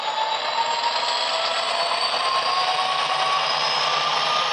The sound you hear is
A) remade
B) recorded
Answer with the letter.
B